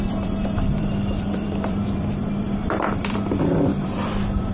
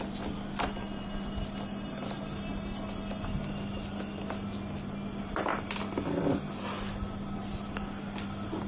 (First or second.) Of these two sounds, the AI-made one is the first